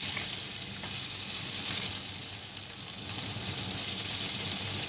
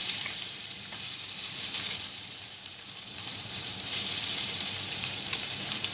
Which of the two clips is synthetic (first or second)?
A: second